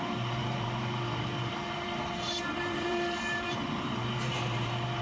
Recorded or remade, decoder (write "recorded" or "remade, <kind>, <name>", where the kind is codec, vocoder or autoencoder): remade, vocoder, BigVGAN v2